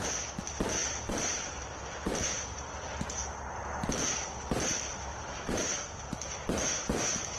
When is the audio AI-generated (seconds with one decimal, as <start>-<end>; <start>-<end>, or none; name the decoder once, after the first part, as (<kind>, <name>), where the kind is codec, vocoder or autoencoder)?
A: 0.8-3.0 (vocoder, BigVGAN v2); 5.1-5.8